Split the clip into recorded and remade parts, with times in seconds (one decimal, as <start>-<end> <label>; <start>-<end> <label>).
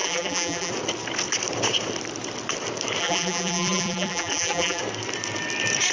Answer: 0.0-0.7 remade; 0.7-3.0 recorded; 3.0-4.8 remade; 4.8-5.9 recorded